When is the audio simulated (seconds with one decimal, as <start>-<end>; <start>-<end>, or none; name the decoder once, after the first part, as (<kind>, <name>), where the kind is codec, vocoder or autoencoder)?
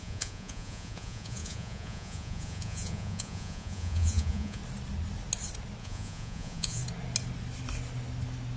0.0-4.6 (vocoder, Vocos); 5.8-6.8